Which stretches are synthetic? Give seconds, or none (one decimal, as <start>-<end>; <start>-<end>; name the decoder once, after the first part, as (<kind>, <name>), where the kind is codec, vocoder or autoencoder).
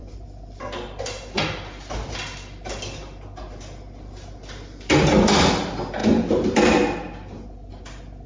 none